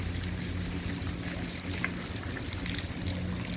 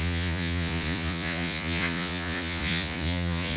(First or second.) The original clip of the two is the first